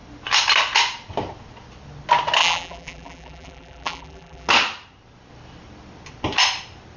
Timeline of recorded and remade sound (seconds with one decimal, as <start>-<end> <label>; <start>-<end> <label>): 0.0-2.4 recorded; 2.4-4.5 remade; 4.5-7.0 recorded